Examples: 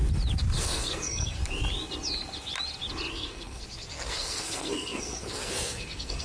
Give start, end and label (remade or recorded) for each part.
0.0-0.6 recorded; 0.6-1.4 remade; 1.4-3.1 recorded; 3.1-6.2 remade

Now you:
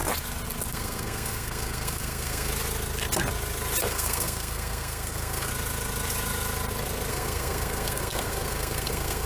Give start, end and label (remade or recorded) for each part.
0.0-0.7 recorded; 0.7-2.5 remade; 2.5-3.9 recorded; 3.9-5.5 remade; 5.5-7.1 recorded; 7.1-9.3 remade